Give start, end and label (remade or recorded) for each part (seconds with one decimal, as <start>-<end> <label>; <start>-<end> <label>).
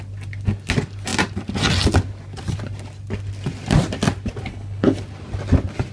0.0-4.5 recorded; 4.5-5.0 remade; 5.0-5.9 recorded